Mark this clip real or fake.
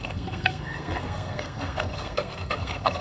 fake